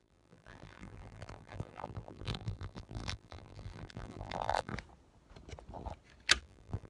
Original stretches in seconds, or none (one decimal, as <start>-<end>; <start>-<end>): 4.7-6.4